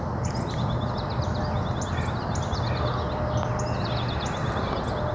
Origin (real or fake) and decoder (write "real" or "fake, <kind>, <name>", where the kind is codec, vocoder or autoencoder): real